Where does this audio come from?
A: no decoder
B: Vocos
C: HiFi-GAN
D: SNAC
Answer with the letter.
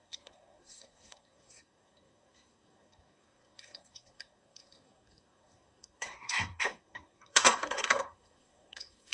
D